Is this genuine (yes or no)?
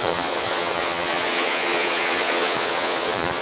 no